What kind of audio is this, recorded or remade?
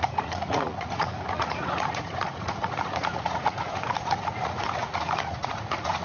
remade